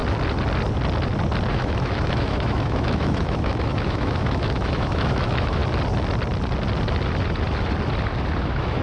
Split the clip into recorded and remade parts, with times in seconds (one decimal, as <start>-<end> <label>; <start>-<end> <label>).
0.0-1.5 recorded; 1.5-5.6 remade; 5.6-8.4 recorded; 8.4-8.8 remade